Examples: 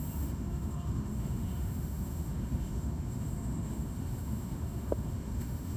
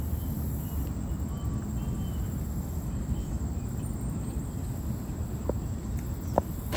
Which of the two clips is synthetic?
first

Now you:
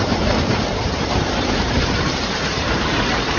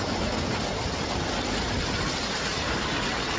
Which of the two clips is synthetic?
first